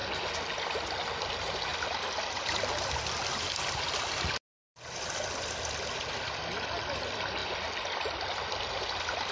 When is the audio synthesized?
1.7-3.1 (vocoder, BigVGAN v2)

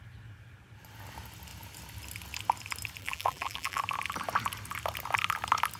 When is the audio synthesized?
3.0-3.8 (vocoder, BigVGAN v2)

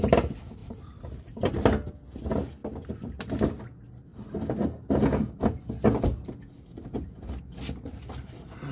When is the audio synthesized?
0.6-1.5 (vocoder, BigVGAN v2); 2.6-3.6